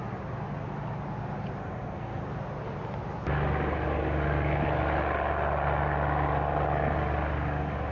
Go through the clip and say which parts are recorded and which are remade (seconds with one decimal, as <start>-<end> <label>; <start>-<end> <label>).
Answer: 0.0-1.6 recorded; 1.6-2.2 remade; 2.2-7.9 recorded